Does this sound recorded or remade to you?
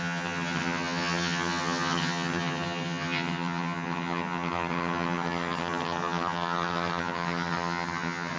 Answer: remade